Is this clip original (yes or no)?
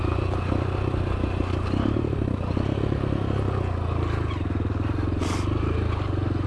yes